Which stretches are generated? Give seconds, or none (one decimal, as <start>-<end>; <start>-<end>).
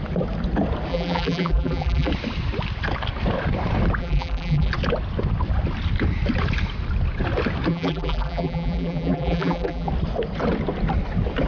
0.9-2.1; 4.0-4.7; 7.7-9.9